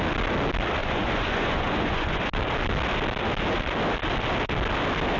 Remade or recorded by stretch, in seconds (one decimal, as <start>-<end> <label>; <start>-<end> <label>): 0.0-0.8 recorded; 0.8-2.2 remade; 2.2-5.2 recorded